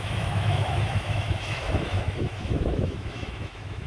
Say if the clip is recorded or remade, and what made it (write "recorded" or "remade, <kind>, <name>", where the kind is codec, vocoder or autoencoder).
remade, autoencoder, DAC-VAE